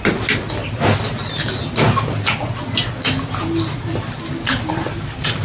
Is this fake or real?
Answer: real